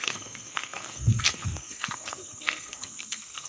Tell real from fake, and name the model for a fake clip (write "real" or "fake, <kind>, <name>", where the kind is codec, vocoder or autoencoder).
fake, codec, SNAC